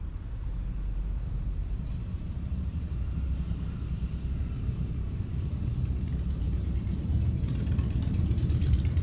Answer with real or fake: fake